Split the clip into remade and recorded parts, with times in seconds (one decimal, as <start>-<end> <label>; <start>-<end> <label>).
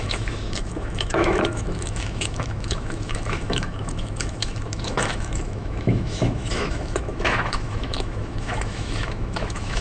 0.0-9.8 remade